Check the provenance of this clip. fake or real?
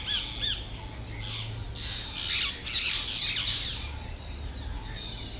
real